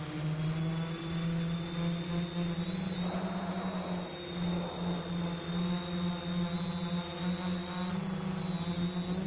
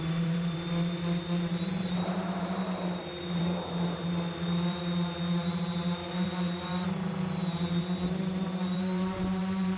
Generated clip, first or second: second